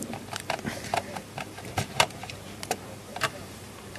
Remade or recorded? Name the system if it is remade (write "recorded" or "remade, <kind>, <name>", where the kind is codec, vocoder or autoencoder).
remade, vocoder, BigVGAN v2